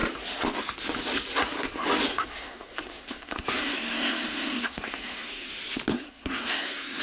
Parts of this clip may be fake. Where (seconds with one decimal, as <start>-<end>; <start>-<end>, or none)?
2.1-5.5; 5.9-7.0